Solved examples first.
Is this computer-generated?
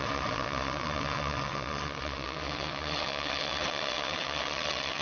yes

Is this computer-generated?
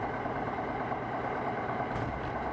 no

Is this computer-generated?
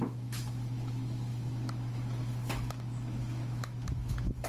yes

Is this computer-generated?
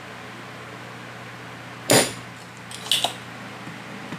no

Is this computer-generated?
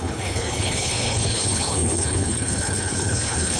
yes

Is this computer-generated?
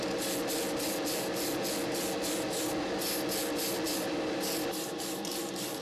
no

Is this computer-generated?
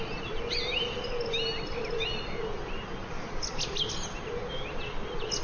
no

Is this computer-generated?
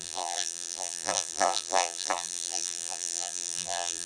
yes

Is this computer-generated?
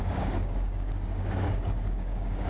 yes